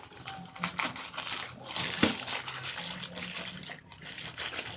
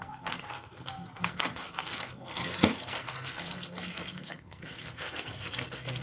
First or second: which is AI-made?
second